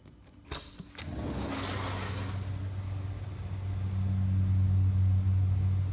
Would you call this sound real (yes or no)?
yes